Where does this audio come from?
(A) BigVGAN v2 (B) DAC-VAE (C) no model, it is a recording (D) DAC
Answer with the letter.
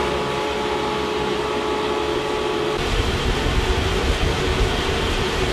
C